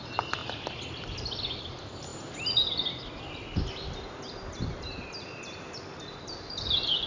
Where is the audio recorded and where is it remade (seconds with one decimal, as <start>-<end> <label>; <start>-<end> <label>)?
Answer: 0.0-7.1 recorded